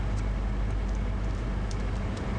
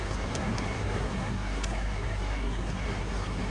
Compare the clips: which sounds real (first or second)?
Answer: first